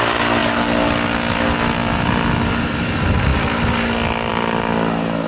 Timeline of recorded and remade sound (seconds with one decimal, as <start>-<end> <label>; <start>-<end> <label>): 0.0-5.3 recorded